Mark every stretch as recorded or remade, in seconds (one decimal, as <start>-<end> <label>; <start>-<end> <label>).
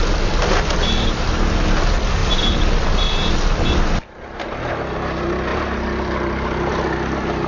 0.0-7.5 recorded